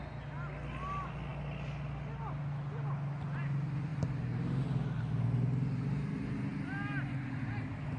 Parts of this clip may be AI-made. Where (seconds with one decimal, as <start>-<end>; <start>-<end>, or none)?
none